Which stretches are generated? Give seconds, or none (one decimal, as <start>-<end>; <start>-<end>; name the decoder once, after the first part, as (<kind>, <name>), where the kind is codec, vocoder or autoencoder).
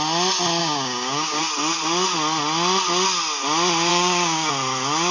0.6-1.4 (codec, DAC); 3.9-4.5